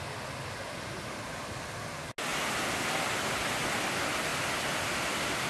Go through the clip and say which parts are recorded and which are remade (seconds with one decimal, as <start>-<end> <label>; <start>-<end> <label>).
0.0-5.5 recorded